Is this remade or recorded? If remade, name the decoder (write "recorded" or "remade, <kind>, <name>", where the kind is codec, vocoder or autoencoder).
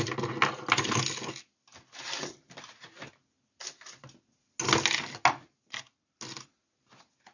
recorded